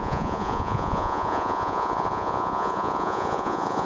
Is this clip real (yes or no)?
no